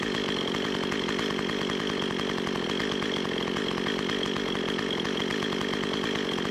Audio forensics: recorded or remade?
recorded